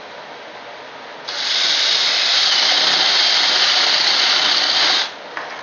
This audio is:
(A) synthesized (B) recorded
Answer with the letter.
B